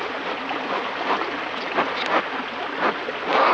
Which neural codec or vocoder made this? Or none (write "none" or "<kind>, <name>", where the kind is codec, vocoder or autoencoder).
none